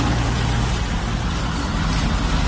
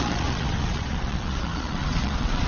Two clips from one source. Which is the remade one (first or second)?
second